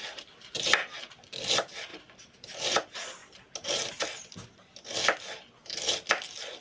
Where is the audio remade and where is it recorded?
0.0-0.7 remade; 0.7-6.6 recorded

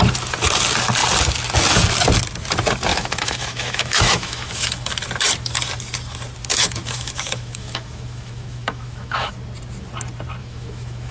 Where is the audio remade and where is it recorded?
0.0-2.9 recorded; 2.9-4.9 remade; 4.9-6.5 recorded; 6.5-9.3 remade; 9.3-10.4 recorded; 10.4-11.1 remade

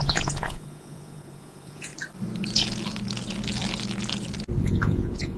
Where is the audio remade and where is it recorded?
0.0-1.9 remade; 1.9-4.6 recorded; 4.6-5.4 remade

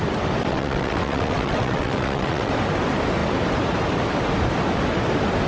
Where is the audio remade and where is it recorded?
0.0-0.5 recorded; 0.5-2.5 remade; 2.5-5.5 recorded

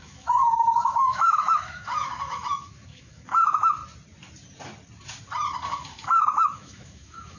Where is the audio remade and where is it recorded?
0.0-3.8 remade; 3.8-5.7 recorded; 5.7-7.4 remade

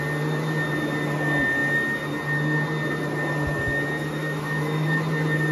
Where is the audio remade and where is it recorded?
0.0-4.2 recorded; 4.2-5.0 remade; 5.0-5.5 recorded

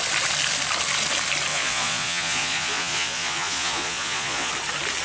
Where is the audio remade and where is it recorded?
0.0-1.5 recorded; 1.5-4.5 remade; 4.5-5.0 recorded